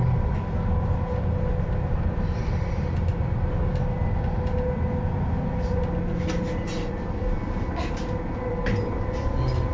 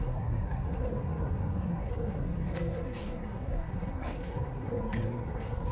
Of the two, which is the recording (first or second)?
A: first